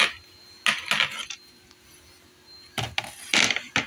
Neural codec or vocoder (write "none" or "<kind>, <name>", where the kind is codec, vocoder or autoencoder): none